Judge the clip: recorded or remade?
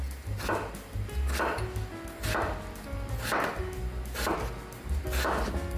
recorded